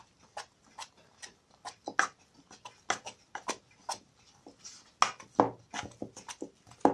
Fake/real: real